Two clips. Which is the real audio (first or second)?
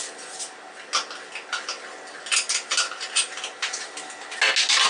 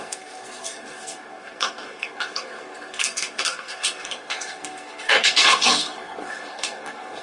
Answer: first